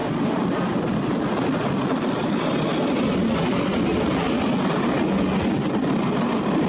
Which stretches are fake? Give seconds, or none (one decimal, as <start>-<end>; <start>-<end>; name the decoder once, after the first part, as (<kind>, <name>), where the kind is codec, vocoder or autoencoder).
none